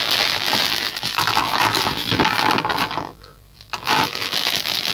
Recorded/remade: remade